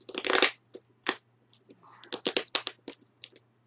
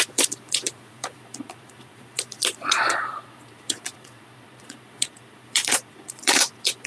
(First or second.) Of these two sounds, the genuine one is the first